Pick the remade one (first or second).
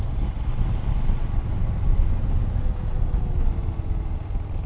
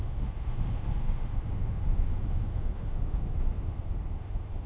second